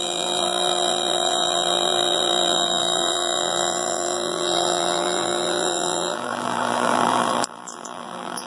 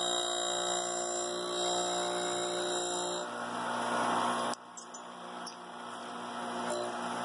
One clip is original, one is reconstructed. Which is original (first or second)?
second